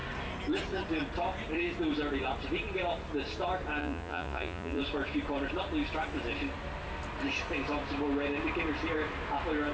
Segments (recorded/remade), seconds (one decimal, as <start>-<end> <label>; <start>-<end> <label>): 0.0-3.8 recorded; 3.8-4.8 remade; 4.8-9.7 recorded